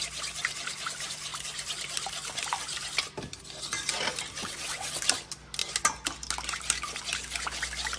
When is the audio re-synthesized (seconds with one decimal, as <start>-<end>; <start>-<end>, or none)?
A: 4.4-5.0